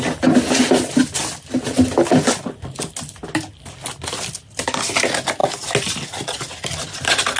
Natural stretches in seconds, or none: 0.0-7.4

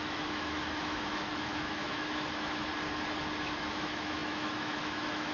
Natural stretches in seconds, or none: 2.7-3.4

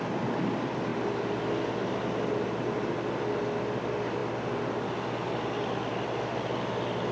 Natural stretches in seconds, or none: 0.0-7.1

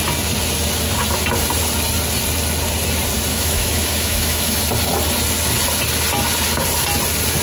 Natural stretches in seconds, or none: 0.0-3.3; 4.6-7.4

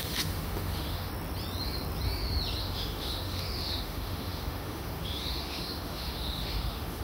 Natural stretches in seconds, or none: 1.1-2.6